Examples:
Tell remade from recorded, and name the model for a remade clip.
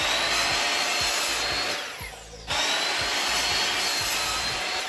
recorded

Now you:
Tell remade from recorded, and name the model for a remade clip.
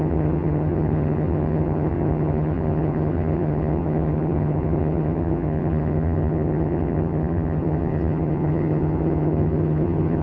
remade, vocoder, HiFi-GAN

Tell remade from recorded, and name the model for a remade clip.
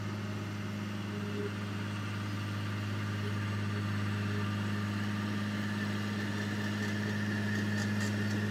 recorded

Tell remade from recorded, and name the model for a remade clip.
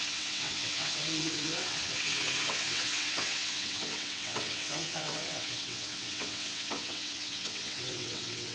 remade, vocoder, WaveNeXt